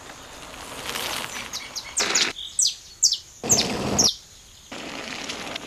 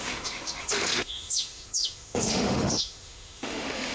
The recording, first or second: first